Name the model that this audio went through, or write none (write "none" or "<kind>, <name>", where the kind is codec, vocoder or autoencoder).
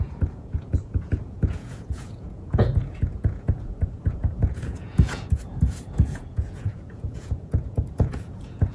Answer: vocoder, Vocos